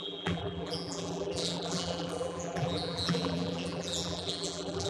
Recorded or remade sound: remade